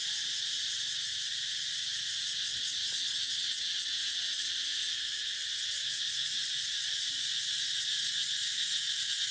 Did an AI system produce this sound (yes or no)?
no